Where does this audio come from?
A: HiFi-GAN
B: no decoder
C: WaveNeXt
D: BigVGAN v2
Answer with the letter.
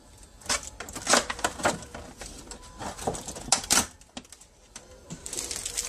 D